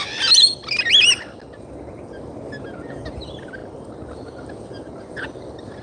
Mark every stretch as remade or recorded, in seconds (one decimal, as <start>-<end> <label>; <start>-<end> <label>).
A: 0.0-5.8 recorded